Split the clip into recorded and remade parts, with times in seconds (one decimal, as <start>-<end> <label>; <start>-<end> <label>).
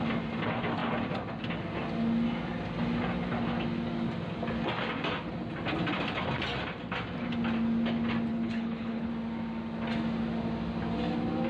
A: 0.0-8.3 recorded; 8.3-9.1 remade; 9.1-11.5 recorded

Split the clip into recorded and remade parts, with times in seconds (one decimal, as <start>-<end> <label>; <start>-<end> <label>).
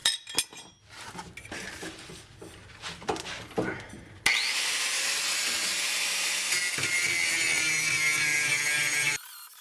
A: 0.0-9.6 recorded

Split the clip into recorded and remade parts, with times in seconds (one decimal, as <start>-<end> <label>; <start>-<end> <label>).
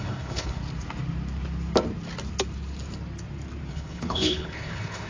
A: 0.0-0.6 remade; 0.6-3.7 recorded; 3.7-5.1 remade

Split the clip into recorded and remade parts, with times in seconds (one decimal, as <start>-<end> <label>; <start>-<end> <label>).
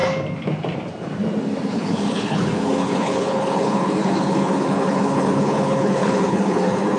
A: 0.0-1.7 recorded; 1.7-7.0 remade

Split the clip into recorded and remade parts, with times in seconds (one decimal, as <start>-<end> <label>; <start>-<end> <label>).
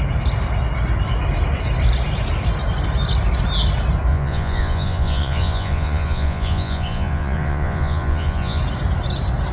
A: 0.0-4.1 recorded; 4.1-8.6 remade; 8.6-9.5 recorded